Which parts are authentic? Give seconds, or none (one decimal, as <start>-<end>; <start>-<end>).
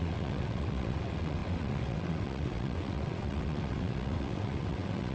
none